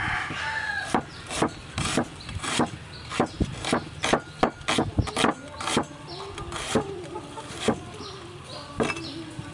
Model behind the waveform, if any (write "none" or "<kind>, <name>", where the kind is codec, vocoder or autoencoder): none